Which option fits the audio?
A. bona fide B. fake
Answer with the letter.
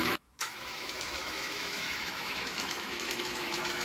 B